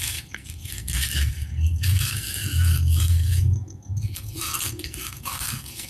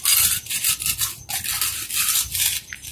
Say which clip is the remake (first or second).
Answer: first